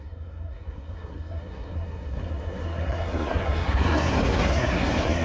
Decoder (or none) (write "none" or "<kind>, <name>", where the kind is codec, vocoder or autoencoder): codec, SNAC